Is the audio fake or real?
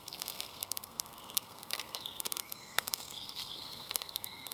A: fake